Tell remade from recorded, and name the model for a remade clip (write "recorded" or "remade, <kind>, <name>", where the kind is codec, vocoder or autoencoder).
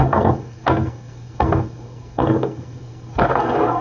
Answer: remade, codec, SNAC